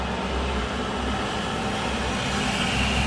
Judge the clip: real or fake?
real